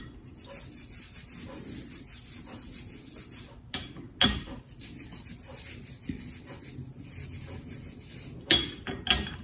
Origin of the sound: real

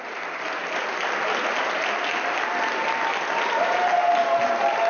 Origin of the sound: real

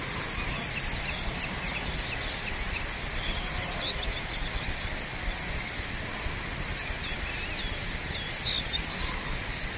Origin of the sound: real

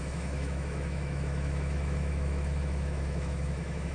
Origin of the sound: fake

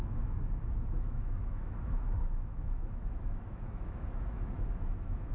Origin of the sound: fake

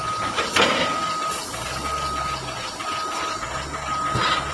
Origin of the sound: real